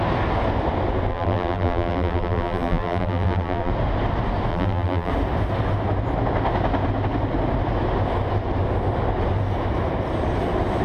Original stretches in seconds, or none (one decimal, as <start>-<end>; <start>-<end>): 0.0-1.1; 3.7-4.5; 5.1-10.8